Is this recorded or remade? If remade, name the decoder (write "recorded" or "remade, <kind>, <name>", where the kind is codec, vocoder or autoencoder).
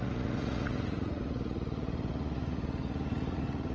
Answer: remade, vocoder, Vocos